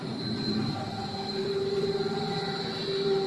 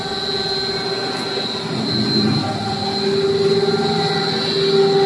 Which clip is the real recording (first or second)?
second